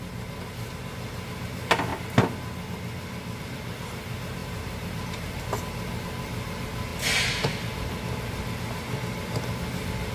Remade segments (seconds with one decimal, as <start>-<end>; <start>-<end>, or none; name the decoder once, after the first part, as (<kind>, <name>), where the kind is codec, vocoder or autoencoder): 4.4-5.4 (vocoder, BigVGAN v2)